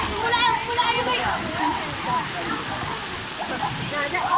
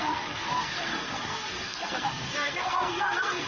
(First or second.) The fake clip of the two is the second